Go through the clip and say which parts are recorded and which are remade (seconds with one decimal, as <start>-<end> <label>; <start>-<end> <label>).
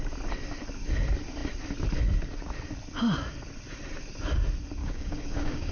0.0-4.8 recorded; 4.8-5.7 remade